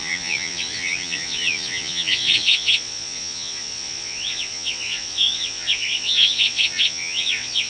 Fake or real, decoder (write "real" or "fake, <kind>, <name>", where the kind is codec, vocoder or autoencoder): fake, vocoder, Vocos